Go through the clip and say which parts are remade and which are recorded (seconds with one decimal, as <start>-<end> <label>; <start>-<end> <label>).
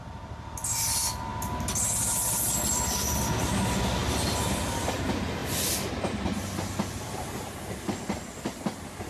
0.0-9.1 recorded